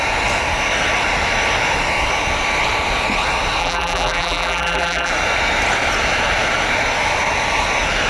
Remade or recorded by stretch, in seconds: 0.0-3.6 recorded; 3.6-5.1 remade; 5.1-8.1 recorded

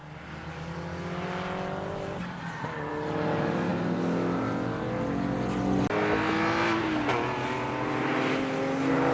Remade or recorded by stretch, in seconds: 0.0-9.1 recorded